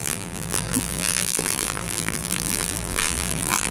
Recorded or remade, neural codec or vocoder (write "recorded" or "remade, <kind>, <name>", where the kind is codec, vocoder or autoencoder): remade, vocoder, BigVGAN v2